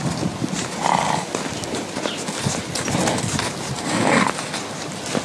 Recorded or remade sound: recorded